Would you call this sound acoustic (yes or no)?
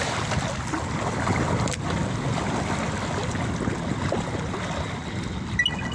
yes